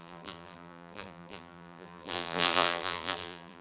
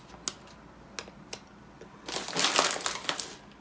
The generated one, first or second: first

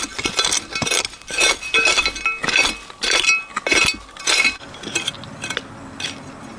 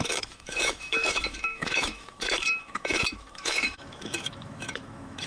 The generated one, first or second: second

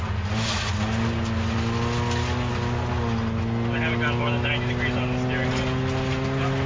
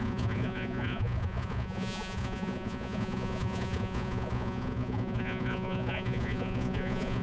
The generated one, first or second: second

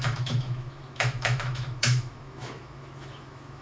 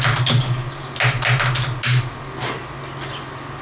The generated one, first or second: first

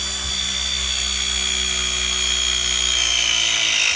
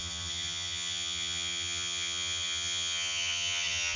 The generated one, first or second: second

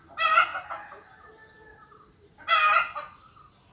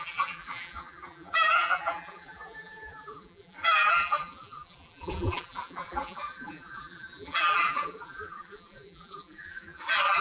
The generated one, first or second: second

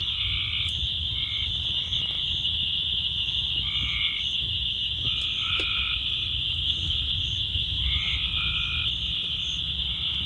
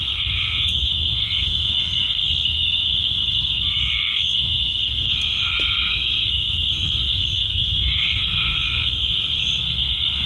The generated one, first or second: second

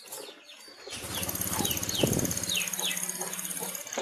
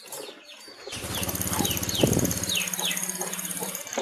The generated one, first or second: second